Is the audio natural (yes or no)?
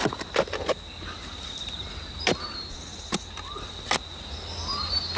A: yes